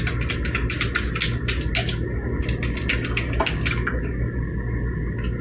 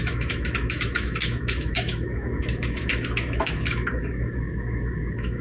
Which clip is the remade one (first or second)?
second